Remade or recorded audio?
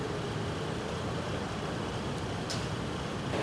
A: recorded